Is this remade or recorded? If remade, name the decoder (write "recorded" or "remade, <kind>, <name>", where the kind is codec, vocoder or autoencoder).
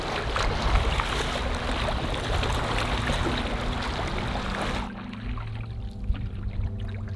recorded